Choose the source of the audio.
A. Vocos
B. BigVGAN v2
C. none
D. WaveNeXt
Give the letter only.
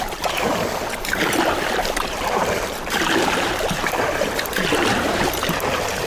B